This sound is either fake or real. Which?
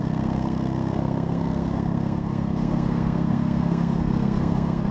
fake